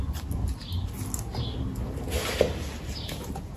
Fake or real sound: real